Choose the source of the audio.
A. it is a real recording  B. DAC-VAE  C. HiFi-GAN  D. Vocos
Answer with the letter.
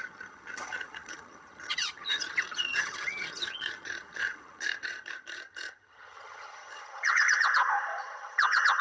C